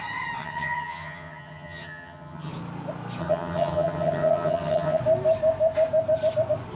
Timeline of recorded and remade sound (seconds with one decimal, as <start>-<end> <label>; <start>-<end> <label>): 0.0-0.4 recorded; 0.4-2.5 remade; 2.5-3.2 recorded; 3.2-5.0 remade; 5.0-6.8 recorded